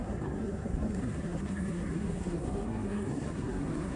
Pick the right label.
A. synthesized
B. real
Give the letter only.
A